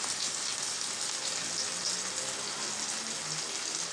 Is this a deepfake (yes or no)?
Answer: no